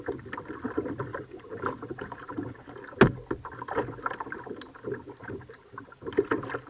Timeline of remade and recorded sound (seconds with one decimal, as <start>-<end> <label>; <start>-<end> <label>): 0.0-1.1 recorded; 1.1-2.7 remade; 2.7-5.2 recorded; 5.2-6.0 remade; 6.0-6.7 recorded